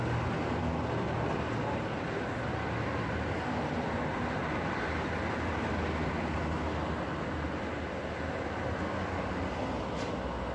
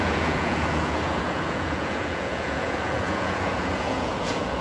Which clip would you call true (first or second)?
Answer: first